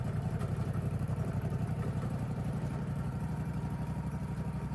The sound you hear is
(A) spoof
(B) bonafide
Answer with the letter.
A